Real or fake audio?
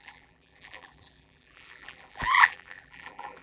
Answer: fake